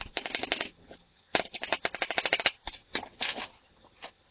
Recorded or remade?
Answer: recorded